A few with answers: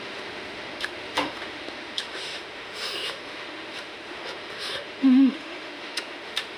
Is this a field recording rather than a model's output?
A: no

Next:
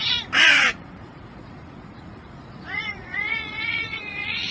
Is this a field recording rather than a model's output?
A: no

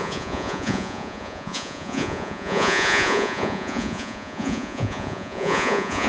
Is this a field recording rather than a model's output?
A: no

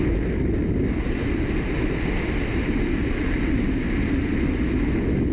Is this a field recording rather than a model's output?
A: yes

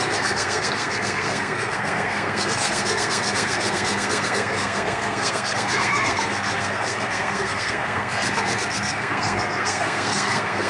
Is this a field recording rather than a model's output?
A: no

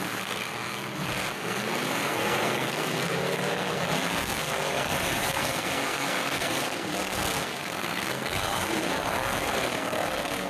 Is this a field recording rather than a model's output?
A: no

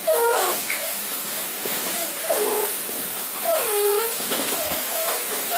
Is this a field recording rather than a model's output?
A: no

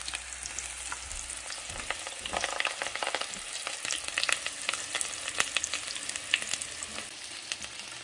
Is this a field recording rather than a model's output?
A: yes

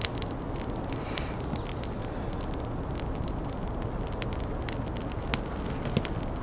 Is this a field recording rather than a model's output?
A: yes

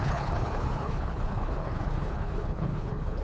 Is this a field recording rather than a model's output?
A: no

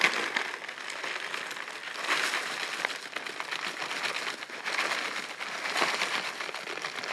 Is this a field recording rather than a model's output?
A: yes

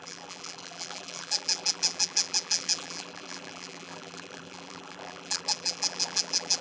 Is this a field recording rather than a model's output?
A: no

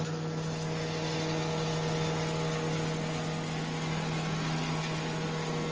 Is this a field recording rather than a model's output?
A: yes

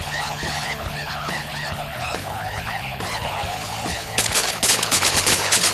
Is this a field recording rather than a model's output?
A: no